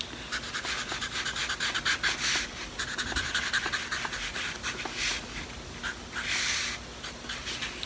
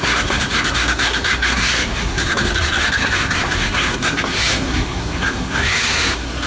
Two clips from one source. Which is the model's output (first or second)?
second